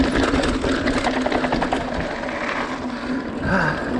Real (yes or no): yes